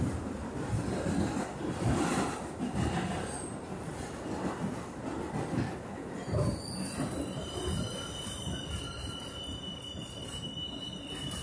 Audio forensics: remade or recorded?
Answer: recorded